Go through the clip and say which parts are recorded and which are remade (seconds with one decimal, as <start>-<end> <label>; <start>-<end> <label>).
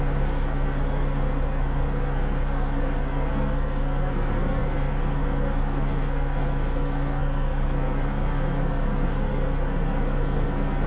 0.0-10.9 remade